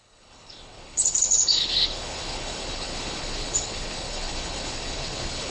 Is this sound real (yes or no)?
no